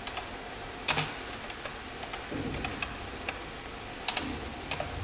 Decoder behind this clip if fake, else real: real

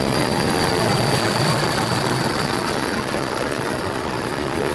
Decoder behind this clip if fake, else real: fake, vocoder, Vocos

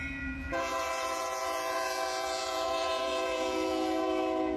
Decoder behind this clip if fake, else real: fake, vocoder, Vocos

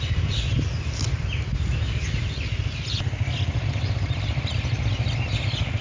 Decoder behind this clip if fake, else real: real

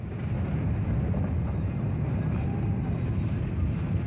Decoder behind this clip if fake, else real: real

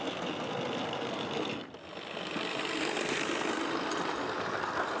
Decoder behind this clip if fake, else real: real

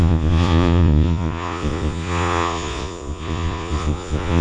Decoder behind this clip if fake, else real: fake, vocoder, Vocos